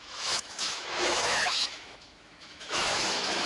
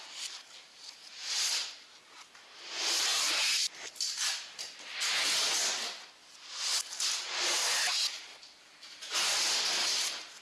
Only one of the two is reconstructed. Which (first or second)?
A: first